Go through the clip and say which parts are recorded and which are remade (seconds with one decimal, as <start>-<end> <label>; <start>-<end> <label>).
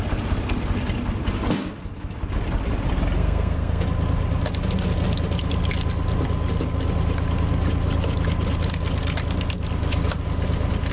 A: 0.0-3.2 recorded; 3.2-3.8 remade; 3.8-10.9 recorded